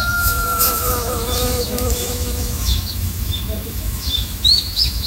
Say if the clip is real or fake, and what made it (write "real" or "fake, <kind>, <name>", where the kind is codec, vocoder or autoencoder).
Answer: fake, autoencoder, DAC-VAE